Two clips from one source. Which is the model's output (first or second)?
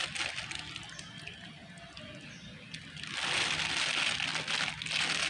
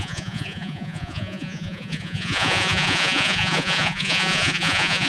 second